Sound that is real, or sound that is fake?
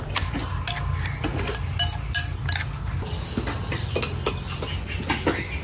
real